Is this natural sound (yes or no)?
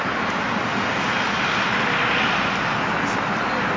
yes